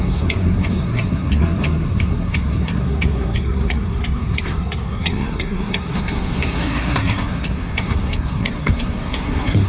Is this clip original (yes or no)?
no